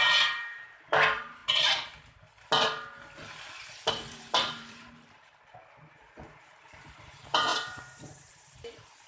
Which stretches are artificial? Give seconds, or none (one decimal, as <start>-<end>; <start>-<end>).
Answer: 0.0-1.4; 3.9-9.1